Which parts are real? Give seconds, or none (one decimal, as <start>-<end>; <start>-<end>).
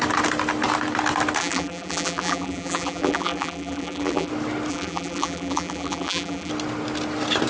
0.0-1.4; 4.3-4.7; 6.5-7.5